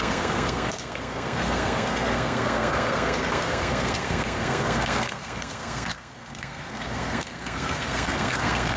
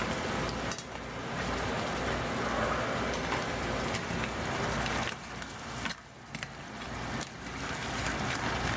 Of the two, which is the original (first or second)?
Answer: second